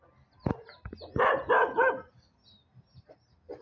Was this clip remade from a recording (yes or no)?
no